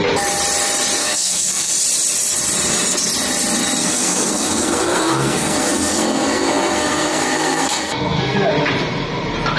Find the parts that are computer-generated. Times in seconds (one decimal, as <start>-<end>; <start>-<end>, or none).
1.0-1.7; 3.8-8.5